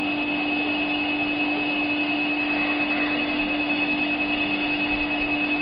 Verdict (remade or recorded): remade